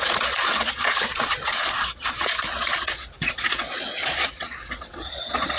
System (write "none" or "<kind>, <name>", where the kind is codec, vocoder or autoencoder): vocoder, Vocos